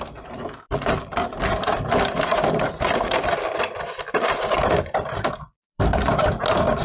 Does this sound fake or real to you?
fake